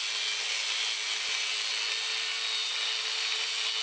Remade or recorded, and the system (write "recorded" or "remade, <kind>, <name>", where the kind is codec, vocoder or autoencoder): recorded